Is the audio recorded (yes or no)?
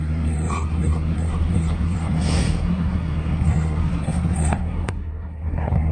no